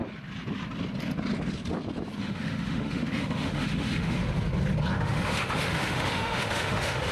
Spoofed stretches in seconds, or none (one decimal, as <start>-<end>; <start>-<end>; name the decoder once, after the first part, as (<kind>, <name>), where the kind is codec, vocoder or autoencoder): 2.2-4.2 (autoencoder, DAC-VAE); 4.9-7.1